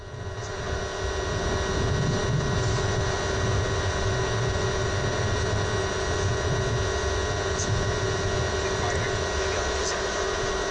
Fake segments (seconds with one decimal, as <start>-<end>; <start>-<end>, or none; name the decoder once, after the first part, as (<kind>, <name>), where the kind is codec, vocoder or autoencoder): none